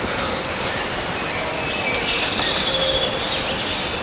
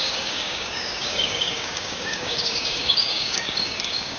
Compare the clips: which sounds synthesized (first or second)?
second